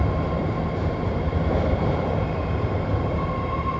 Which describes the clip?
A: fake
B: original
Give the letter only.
A